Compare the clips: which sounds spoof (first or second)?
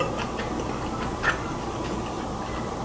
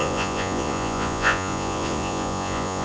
second